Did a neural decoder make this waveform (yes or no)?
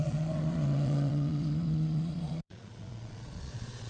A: yes